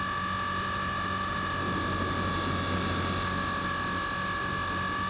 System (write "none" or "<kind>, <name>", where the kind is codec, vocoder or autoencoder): none